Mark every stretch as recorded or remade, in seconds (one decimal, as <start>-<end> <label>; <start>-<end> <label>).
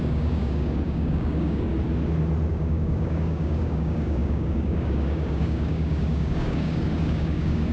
0.0-1.7 remade; 1.7-2.5 recorded; 2.5-7.7 remade